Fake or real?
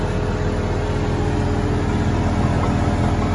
real